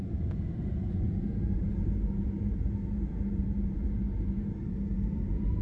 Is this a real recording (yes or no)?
no